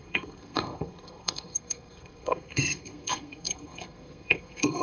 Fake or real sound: fake